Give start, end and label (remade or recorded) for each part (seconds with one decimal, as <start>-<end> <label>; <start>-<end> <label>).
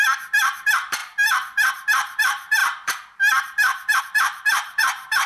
0.0-5.3 remade